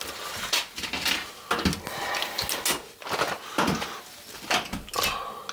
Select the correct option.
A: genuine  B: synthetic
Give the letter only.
A